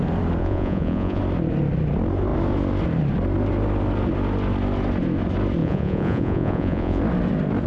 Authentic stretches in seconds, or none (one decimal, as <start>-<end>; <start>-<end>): 0.0-0.4; 1.2-5.6; 7.0-7.7